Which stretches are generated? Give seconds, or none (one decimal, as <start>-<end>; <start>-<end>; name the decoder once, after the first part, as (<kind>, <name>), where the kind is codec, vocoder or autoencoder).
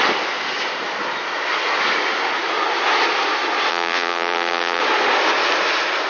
3.7-4.8 (vocoder, Vocos)